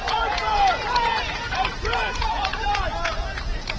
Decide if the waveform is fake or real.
fake